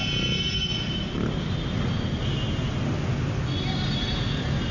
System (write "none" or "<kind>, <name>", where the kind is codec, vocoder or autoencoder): none